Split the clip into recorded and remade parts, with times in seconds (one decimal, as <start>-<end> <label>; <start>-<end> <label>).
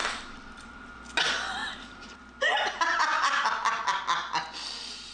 0.0-1.0 remade; 1.0-1.6 recorded; 1.6-2.2 remade; 2.2-3.1 recorded; 3.1-4.0 remade; 4.0-5.1 recorded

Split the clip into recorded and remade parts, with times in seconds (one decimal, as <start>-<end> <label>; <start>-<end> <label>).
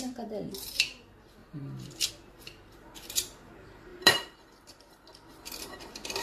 0.0-3.9 recorded; 3.9-4.9 remade; 4.9-6.2 recorded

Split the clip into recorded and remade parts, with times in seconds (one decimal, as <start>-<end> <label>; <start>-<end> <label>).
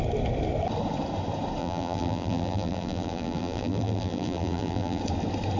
0.0-1.6 recorded; 1.6-5.0 remade; 5.0-5.6 recorded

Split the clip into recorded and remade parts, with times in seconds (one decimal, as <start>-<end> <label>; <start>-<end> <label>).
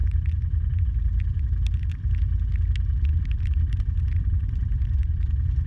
0.0-0.8 remade; 0.8-5.7 recorded